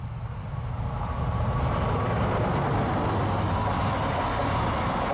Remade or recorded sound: recorded